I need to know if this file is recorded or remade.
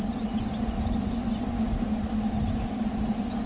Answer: recorded